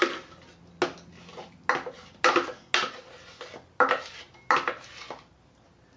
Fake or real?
real